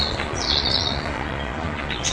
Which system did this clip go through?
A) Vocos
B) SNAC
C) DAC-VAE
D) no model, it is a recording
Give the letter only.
A